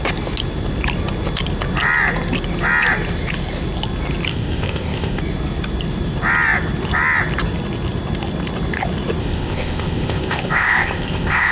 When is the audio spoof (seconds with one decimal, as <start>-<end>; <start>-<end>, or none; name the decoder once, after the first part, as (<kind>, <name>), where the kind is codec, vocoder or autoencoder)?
4.3-5.2 (codec, ZipCodec); 9.2-11.5